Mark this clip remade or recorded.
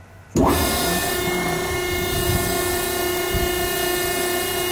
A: recorded